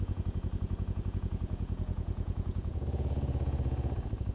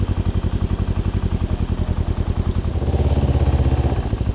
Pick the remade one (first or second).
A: first